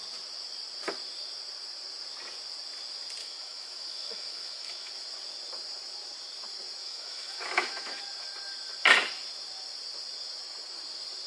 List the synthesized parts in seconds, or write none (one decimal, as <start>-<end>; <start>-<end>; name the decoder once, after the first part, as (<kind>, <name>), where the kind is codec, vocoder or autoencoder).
3.2-4.9 (autoencoder, DAC-VAE); 6.8-8.0